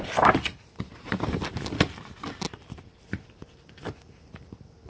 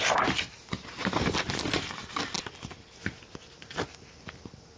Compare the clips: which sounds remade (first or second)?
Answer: first